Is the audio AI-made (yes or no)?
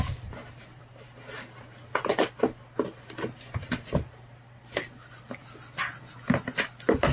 no